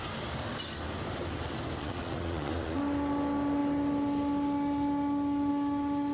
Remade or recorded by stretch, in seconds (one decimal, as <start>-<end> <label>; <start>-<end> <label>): 0.0-1.8 recorded; 1.8-2.8 remade; 2.8-6.1 recorded